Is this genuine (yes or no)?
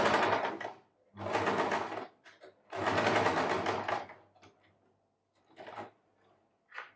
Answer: yes